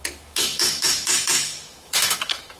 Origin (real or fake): fake